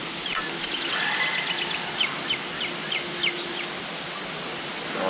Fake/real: real